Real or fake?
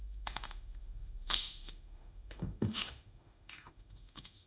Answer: fake